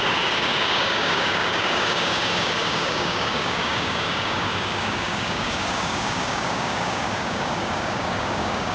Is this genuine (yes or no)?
no